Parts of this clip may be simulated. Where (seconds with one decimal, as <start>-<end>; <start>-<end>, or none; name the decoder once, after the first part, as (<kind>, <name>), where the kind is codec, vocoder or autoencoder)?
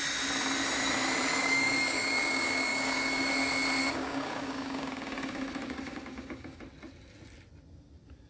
1.4-3.3 (codec, DAC); 3.8-6.6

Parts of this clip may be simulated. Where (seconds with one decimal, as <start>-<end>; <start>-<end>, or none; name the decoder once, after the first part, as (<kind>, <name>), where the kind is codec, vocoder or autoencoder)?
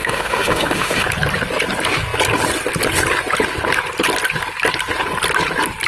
0.0-1.1 (autoencoder, DAC-VAE)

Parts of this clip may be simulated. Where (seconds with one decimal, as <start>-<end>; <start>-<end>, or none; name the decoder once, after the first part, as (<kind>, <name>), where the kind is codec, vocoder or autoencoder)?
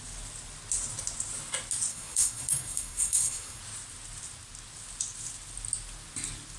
1.9-3.6 (codec, SNAC)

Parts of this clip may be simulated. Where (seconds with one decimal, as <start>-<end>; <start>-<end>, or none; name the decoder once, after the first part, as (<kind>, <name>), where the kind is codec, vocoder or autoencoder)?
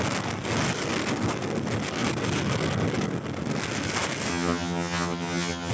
4.3-5.7 (vocoder, HiFi-GAN)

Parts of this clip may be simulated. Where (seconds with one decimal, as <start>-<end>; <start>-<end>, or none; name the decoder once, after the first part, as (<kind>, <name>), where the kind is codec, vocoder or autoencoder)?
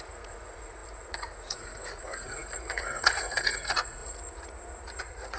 0.0-4.0 (vocoder, Vocos); 5.0-5.4